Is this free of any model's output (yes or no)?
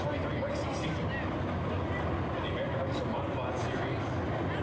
yes